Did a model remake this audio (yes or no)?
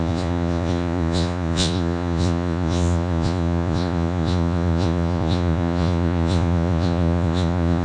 yes